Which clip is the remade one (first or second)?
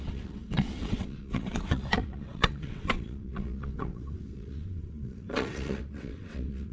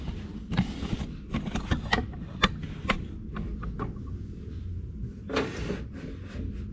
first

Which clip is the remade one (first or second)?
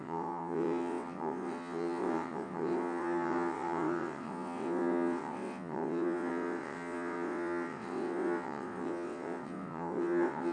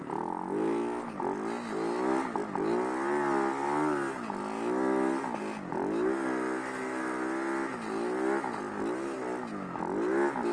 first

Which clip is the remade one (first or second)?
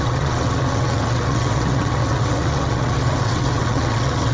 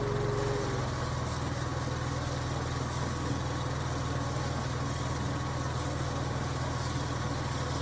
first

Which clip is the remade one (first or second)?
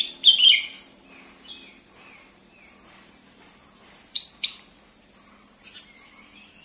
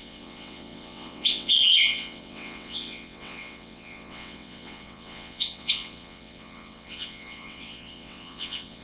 second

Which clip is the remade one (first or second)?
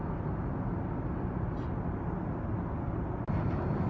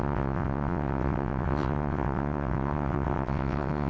second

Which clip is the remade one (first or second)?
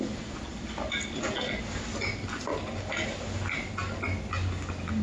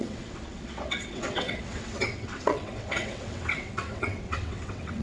second